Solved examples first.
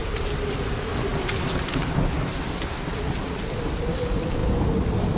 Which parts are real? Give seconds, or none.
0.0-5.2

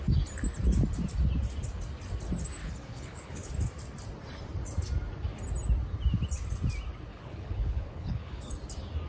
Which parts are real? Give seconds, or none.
0.0-2.6; 3.5-7.1; 8.5-9.1

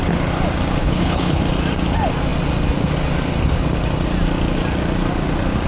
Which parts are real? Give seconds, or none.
0.0-0.8; 1.4-5.7

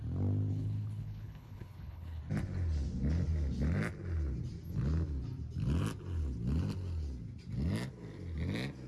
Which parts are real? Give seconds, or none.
0.0-0.5; 2.2-8.9

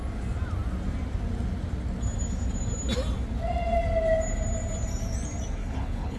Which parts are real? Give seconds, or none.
0.0-5.6

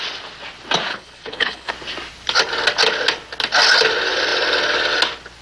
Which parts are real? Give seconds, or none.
0.0-0.9; 1.7-5.4